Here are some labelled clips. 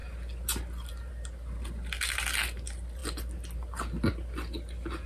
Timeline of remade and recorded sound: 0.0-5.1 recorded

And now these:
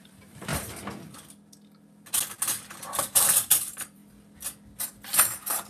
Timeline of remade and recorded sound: 0.0-0.5 remade; 0.5-2.9 recorded; 2.9-4.0 remade; 4.0-5.2 recorded; 5.2-5.7 remade